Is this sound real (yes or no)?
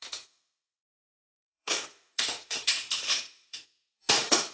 no